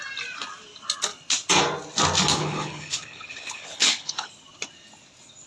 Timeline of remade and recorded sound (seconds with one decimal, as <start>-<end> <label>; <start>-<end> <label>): 0.0-2.3 recorded; 2.3-4.3 remade; 4.3-5.5 recorded